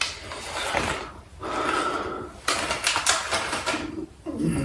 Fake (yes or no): no